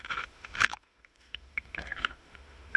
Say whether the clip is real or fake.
fake